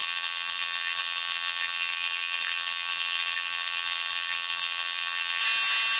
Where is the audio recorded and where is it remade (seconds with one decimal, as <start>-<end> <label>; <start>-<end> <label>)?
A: 0.0-5.4 remade; 5.4-6.0 recorded